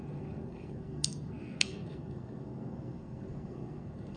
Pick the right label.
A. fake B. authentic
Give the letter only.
A